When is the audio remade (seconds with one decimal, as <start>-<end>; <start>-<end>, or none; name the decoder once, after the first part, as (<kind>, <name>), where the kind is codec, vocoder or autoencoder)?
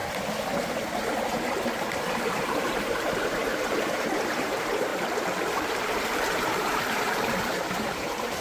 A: 2.3-4.9 (vocoder, BigVGAN v2); 6.0-8.4